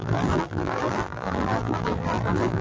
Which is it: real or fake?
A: fake